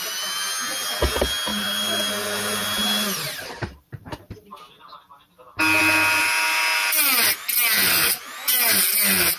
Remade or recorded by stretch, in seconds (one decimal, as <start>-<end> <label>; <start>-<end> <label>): 0.0-1.5 recorded; 1.5-4.6 remade; 4.6-9.4 recorded